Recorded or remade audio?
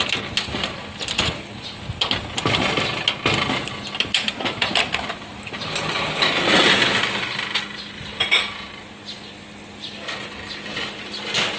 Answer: recorded